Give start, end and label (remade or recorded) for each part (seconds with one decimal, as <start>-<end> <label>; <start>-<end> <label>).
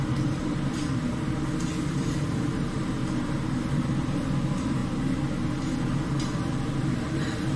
0.0-3.0 remade; 3.0-3.6 recorded; 3.6-4.8 remade; 4.8-6.0 recorded; 6.0-7.6 remade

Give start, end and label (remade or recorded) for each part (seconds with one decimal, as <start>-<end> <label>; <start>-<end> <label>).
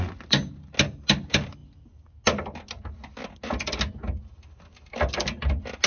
0.0-5.9 recorded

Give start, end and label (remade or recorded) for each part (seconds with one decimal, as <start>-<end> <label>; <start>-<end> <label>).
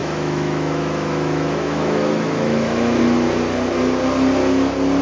0.0-3.0 remade; 3.0-5.0 recorded